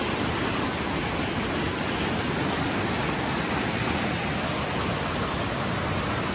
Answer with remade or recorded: recorded